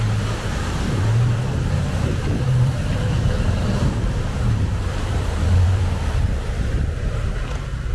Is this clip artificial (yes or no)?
yes